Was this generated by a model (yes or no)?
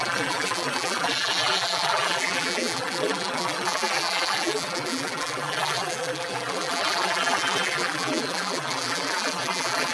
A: yes